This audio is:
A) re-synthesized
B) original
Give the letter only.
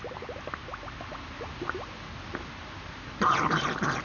B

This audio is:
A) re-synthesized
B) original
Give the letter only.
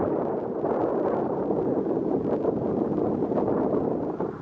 B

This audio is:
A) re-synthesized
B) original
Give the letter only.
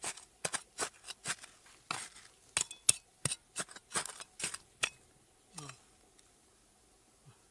B